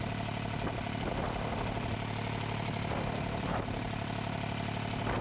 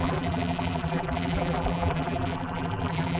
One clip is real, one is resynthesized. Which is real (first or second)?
first